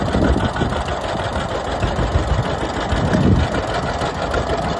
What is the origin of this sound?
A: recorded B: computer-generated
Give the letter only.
A